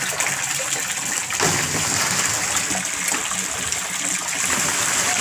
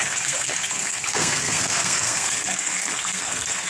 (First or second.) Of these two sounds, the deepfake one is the second